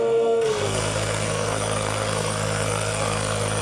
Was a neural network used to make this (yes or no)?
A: yes